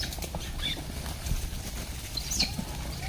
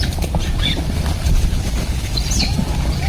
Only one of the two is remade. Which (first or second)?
second